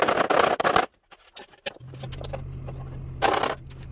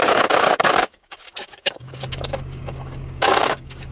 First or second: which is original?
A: first